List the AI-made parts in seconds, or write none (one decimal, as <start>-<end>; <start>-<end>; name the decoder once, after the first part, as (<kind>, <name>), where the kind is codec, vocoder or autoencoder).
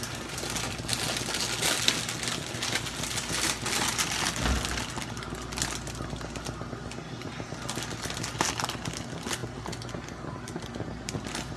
none